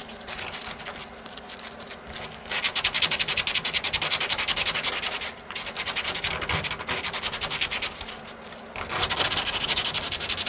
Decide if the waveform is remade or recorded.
recorded